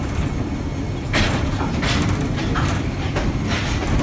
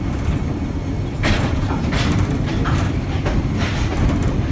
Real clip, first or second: first